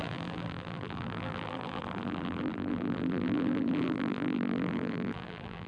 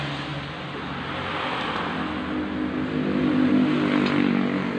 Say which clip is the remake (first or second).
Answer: first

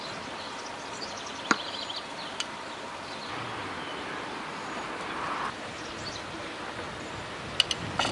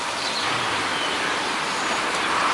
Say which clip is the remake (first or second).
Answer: second